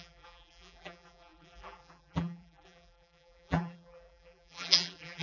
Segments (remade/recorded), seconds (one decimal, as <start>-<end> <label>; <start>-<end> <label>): 0.0-5.2 remade

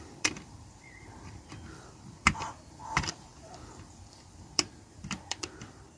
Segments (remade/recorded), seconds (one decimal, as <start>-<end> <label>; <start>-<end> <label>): 0.0-6.0 remade